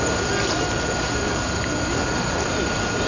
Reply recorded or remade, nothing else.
recorded